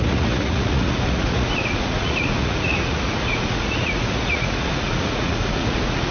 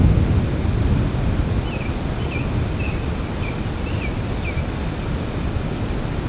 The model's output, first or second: first